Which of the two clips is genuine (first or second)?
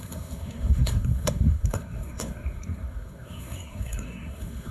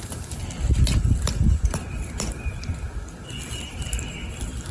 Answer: second